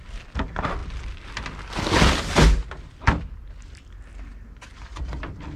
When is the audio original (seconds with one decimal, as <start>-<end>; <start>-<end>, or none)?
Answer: 0.0-5.6